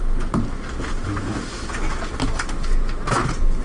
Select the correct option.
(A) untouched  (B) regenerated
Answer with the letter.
A